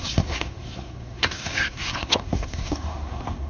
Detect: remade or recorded remade